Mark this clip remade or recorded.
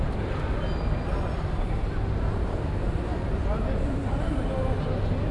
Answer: recorded